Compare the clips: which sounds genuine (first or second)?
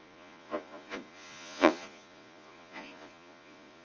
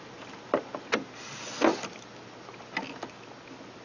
second